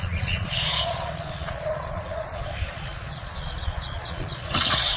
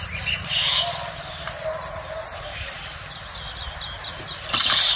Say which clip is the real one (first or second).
second